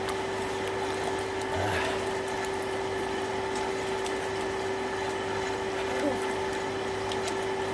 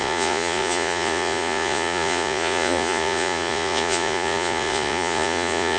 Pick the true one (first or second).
first